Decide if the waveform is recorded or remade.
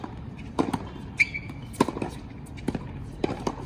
recorded